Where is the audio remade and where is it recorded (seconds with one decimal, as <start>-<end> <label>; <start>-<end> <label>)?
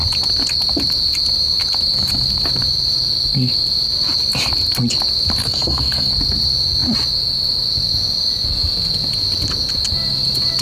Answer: 0.0-5.4 recorded; 5.4-6.1 remade; 6.1-10.6 recorded